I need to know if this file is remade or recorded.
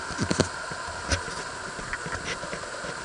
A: recorded